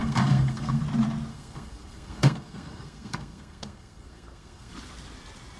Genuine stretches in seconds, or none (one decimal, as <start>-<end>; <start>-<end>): 0.8-1.3; 4.7-5.6